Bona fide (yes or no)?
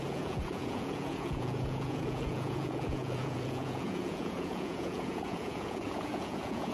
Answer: no